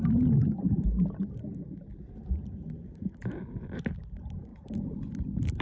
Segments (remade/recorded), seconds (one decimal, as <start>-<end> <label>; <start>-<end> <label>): 0.0-5.6 recorded